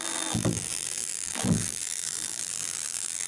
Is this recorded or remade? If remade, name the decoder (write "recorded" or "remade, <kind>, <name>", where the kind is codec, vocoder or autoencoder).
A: remade, vocoder, BigVGAN v2